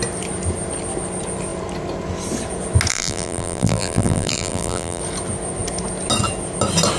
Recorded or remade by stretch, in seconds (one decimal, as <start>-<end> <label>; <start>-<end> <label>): 0.0-2.9 recorded; 2.9-5.0 remade; 5.0-7.0 recorded